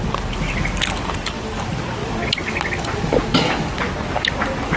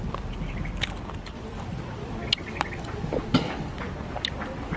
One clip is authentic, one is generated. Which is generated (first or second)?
second